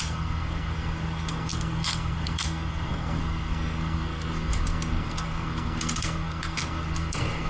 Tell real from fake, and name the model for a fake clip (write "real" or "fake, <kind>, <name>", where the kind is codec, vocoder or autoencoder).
fake, codec, SNAC